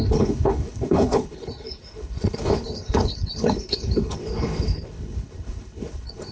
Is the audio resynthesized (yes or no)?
yes